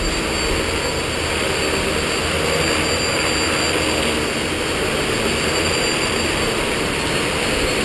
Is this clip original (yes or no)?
yes